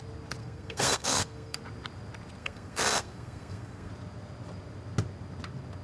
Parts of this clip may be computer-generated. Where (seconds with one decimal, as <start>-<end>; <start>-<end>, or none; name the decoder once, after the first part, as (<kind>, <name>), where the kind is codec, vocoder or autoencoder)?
0.4-1.6 (codec, SNAC); 2.4-3.9